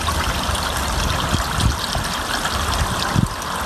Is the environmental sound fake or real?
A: real